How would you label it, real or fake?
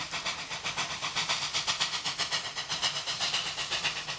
real